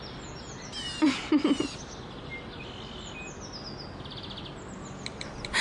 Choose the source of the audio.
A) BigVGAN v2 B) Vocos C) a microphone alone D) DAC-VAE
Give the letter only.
C